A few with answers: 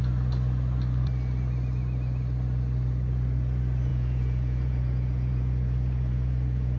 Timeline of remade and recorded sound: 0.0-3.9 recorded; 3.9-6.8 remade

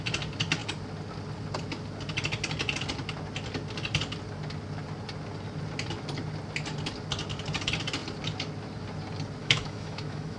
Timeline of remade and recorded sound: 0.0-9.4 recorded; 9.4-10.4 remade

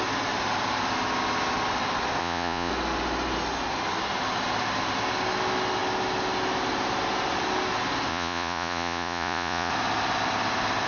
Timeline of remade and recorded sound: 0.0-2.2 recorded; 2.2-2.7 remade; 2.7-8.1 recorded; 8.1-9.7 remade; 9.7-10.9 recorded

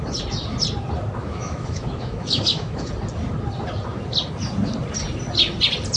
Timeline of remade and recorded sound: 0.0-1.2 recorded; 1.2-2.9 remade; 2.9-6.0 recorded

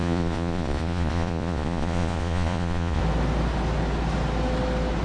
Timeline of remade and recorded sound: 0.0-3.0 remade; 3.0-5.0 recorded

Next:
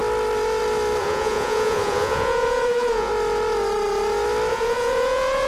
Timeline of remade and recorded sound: 0.0-1.0 recorded; 1.0-3.1 remade; 3.1-4.5 recorded; 4.5-5.5 remade

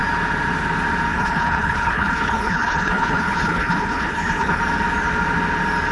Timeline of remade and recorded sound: 0.0-1.1 recorded; 1.1-4.6 remade; 4.6-5.9 recorded